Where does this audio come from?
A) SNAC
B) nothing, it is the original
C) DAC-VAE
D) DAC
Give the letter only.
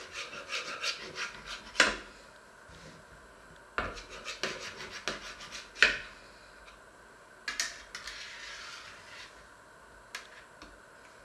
B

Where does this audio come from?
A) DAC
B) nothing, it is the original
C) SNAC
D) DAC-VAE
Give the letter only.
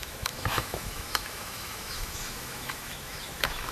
D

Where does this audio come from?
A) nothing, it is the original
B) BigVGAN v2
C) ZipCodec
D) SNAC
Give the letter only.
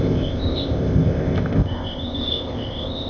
C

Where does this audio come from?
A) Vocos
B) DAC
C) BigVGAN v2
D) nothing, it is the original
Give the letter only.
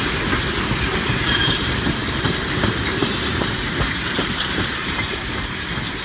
C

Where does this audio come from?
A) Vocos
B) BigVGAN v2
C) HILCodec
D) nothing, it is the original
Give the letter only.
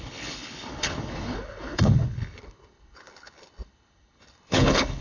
C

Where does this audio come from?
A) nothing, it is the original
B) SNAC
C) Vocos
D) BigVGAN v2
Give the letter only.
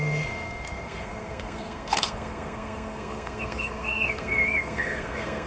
B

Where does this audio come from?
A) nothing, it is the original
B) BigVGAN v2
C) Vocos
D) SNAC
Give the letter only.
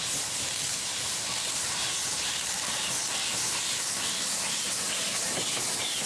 A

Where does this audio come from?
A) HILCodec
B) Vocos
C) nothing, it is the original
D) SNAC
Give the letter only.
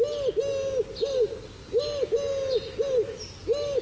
C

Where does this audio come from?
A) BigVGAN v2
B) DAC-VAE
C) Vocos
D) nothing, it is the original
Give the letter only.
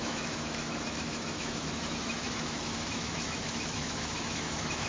B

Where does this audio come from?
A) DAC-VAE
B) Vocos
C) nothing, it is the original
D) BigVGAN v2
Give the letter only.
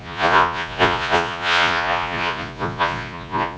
B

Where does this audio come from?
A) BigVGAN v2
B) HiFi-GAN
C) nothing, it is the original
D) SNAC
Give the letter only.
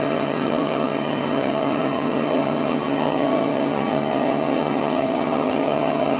B